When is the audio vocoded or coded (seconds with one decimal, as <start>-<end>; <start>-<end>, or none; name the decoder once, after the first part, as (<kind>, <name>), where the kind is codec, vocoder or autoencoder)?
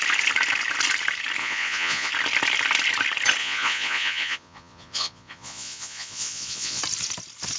1.4-2.1 (vocoder, Vocos); 3.4-6.8